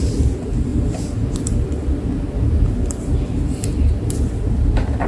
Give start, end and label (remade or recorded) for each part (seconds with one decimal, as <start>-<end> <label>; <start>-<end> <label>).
0.0-5.1 recorded

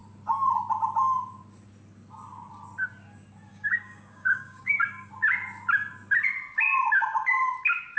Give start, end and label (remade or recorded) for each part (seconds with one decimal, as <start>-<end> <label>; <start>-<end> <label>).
0.0-3.5 recorded; 3.5-5.1 remade; 5.1-8.0 recorded

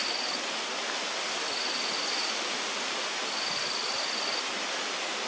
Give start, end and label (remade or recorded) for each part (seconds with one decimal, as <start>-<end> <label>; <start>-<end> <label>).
0.0-5.3 recorded